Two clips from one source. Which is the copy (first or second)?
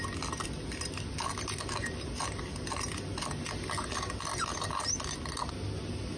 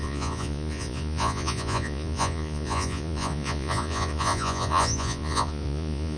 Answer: second